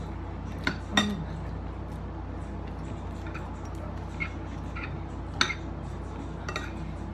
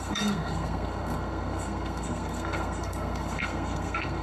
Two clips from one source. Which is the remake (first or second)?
second